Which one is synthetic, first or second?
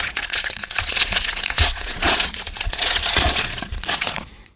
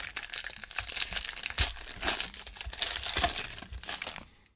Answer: first